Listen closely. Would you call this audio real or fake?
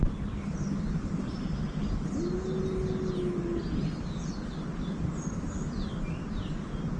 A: real